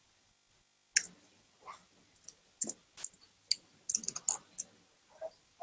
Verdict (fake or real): real